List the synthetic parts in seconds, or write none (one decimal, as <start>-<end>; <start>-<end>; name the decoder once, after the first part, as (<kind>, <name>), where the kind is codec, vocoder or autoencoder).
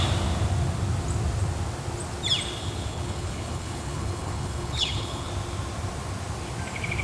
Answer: 2.6-5.3 (codec, HILCodec)